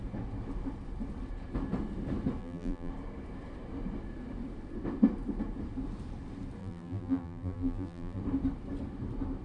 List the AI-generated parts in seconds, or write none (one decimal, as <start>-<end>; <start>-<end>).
2.4-2.9; 6.6-8.2

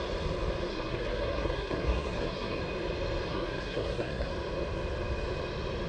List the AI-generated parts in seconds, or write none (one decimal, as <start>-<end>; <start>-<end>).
0.7-2.6; 3.3-4.3

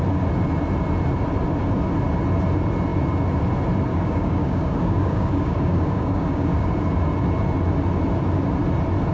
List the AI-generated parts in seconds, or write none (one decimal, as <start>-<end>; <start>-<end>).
3.9-6.7